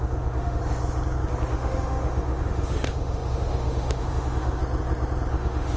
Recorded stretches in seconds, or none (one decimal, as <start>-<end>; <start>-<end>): 0.6-1.5; 4.6-5.3